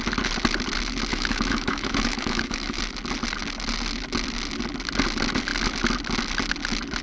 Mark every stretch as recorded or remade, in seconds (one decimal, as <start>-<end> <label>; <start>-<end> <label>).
0.0-1.1 recorded; 1.1-2.8 remade; 2.8-7.0 recorded